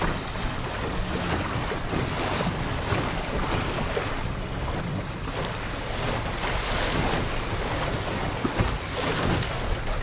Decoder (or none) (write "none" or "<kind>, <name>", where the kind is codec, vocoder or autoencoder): none